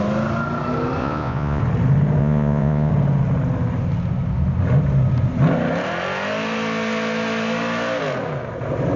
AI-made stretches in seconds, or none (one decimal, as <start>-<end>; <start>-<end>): 1.0-1.6; 2.2-2.9